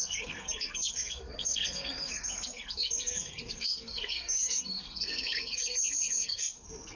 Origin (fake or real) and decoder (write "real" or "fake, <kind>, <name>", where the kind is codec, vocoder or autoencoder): fake, codec, SNAC